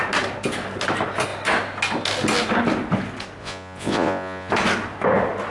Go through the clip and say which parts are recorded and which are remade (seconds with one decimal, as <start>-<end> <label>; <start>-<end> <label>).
0.0-3.4 recorded; 3.4-4.5 remade; 4.5-5.5 recorded